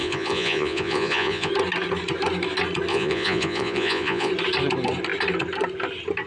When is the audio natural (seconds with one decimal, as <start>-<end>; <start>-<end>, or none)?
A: 1.5-2.9; 4.3-6.3